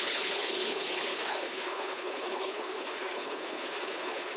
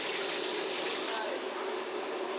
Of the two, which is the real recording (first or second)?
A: second